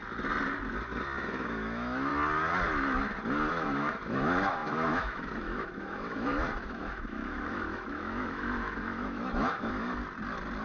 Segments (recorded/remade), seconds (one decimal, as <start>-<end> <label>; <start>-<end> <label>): 0.0-1.3 recorded; 1.3-2.1 remade; 2.1-3.5 recorded; 3.5-10.0 remade; 10.0-10.6 recorded